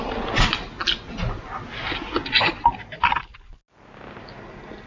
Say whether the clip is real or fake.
real